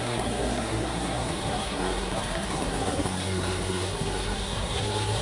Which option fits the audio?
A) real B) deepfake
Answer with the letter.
B